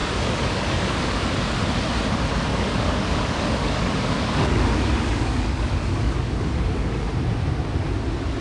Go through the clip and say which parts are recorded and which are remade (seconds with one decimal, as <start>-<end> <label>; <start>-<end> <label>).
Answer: 0.0-1.3 remade; 1.3-2.5 recorded; 2.5-7.1 remade; 7.1-8.4 recorded